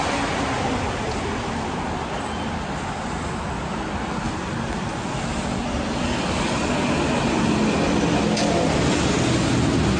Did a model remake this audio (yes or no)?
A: no